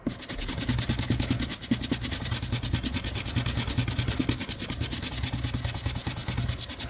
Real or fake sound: real